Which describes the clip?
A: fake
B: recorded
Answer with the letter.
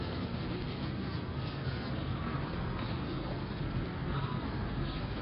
A